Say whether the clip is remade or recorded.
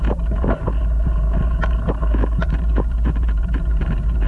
recorded